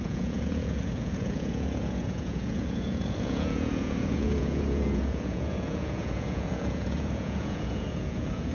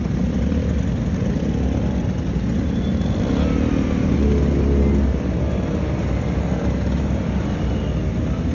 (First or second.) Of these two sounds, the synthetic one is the first